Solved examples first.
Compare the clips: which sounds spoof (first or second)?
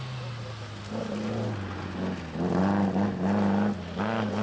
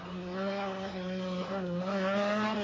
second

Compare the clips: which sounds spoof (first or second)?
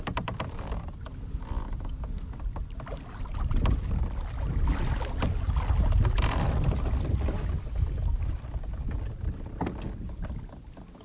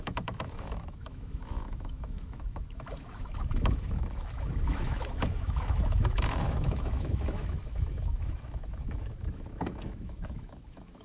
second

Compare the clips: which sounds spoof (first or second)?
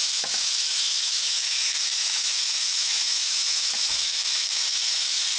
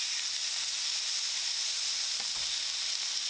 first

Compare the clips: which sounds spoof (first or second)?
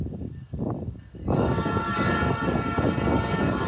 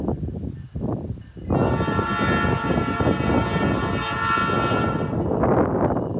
first